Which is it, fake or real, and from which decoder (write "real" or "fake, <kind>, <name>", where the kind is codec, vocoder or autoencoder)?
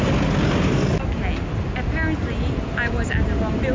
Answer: real